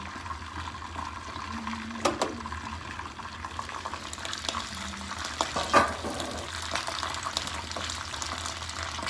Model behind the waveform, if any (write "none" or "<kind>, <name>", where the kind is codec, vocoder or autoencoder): none